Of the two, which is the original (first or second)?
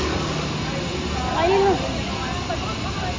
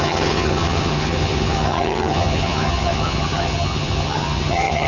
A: first